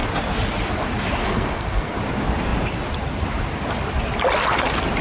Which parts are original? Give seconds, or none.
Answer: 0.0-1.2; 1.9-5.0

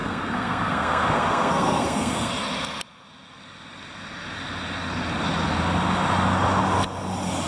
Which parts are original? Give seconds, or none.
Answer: 2.3-7.5

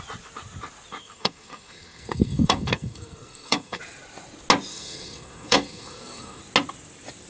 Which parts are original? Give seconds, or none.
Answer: 0.0-1.0; 3.8-4.7; 6.4-7.3

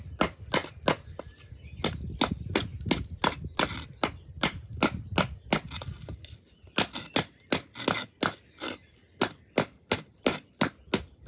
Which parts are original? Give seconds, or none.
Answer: 0.0-11.3

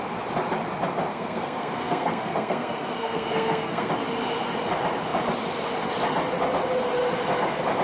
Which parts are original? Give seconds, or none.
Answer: 0.0-1.1; 3.9-7.8